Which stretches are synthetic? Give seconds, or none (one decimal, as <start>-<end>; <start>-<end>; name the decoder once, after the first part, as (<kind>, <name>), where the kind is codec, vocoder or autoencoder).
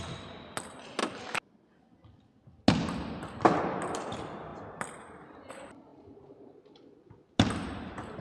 none